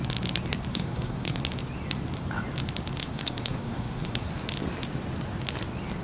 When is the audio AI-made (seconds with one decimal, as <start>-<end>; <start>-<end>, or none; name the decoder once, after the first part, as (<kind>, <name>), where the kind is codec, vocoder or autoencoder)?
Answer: 0.7-1.4 (codec, SNAC); 3.0-4.3